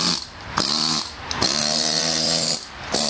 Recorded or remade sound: remade